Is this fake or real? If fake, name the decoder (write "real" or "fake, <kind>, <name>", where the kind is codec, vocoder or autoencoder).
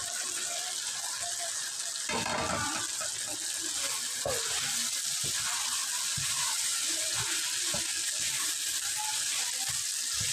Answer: real